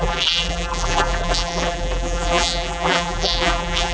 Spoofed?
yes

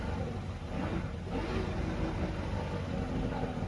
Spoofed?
no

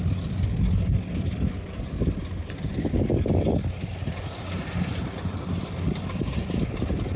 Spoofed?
no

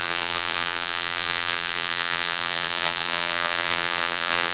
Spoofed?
yes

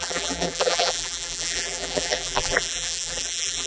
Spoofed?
yes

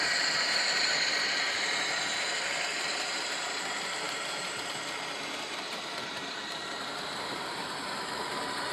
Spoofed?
yes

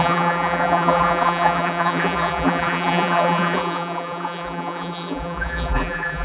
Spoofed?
yes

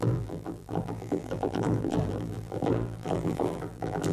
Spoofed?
yes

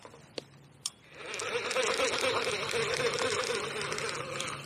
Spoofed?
yes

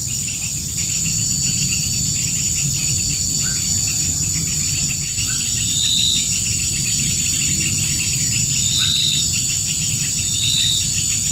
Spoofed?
no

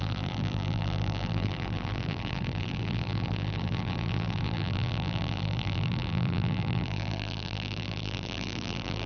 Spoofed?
yes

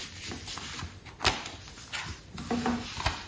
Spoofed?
no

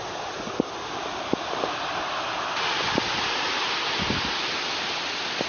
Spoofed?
no